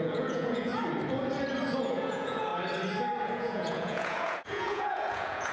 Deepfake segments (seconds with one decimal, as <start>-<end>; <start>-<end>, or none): 0.0-0.7; 1.8-2.5; 3.2-5.5